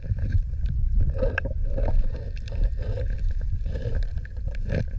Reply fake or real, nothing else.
fake